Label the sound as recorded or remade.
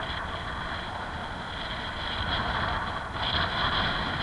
recorded